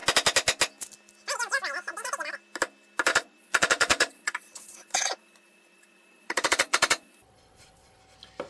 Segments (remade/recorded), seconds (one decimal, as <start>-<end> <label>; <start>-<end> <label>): 0.0-3.1 recorded; 3.1-8.0 remade; 8.0-8.5 recorded